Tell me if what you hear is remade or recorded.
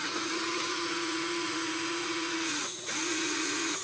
remade